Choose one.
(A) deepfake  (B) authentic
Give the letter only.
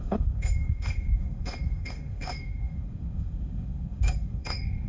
A